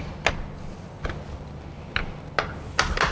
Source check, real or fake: real